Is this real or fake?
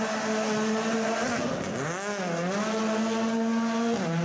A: real